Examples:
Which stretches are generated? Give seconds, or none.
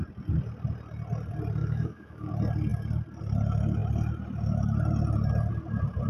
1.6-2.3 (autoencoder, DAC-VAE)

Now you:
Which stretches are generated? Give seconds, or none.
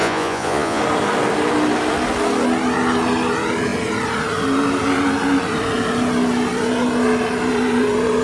0.0-0.8 (vocoder, Vocos)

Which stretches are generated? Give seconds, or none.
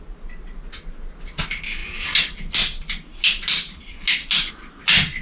none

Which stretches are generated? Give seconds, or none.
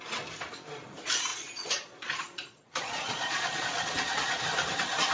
1.3-4.4 (vocoder, Vocos)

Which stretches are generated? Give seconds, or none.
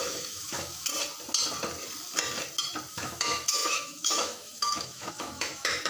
0.0-0.9 (autoencoder, DAC-VAE); 2.9-5.9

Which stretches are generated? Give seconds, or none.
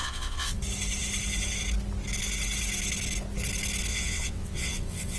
0.0-0.6 (vocoder, WaveNeXt); 3.9-5.2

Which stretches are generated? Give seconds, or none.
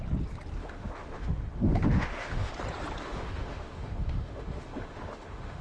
0.6-2.5 (autoencoder, DAC-VAE); 3.0-5.6